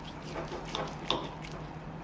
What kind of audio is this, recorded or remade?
recorded